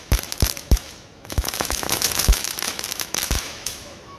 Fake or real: fake